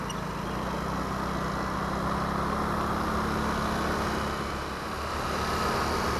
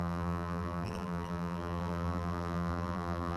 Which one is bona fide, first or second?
first